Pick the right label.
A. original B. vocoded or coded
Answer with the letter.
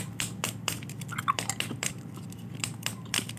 B